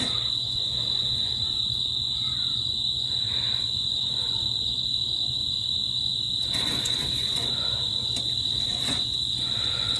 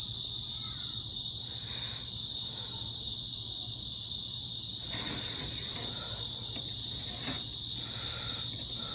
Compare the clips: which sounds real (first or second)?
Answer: second